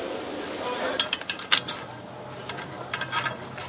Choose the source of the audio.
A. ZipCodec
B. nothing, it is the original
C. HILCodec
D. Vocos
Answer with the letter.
B